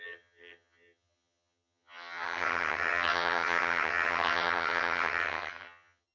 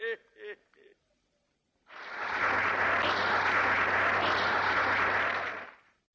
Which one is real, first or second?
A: second